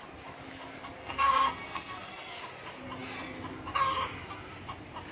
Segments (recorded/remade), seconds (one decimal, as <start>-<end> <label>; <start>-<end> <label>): 0.0-1.0 recorded; 1.0-2.1 remade; 2.1-5.1 recorded

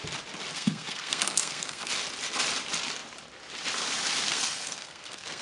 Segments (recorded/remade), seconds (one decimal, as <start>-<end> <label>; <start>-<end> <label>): 0.0-0.5 recorded; 0.5-1.9 remade; 1.9-4.3 recorded; 4.3-5.4 remade

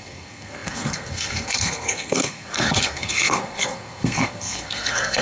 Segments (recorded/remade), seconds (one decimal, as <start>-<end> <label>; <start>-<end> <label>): 0.0-5.2 remade

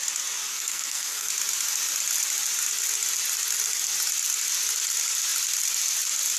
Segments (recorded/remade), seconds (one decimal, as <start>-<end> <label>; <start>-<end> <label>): 0.0-0.5 recorded; 0.5-1.3 remade; 1.3-6.4 recorded